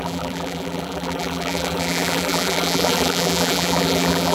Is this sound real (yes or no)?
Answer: no